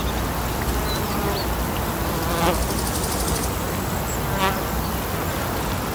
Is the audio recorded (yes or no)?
yes